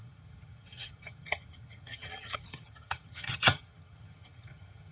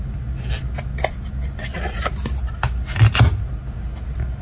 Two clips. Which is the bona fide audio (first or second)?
second